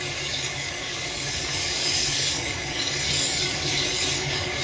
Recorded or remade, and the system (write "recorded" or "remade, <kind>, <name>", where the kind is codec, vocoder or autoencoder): remade, codec, DAC